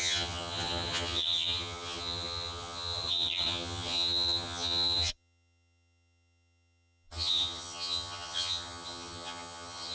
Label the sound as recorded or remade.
remade